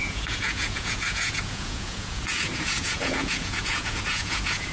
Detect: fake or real fake